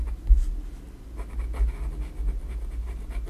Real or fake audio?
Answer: real